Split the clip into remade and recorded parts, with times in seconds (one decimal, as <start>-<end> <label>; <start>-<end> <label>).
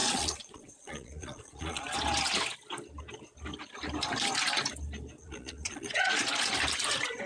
0.0-1.8 remade; 1.8-5.2 recorded; 5.2-6.2 remade; 6.2-7.3 recorded